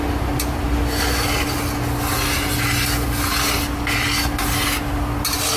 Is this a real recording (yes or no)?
yes